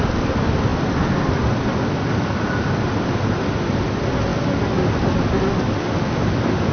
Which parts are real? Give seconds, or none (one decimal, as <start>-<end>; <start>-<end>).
0.0-6.7